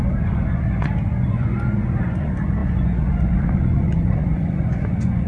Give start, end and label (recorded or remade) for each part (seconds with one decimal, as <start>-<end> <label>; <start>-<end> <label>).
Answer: 0.0-5.3 remade